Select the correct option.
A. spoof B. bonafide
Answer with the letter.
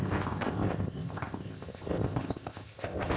A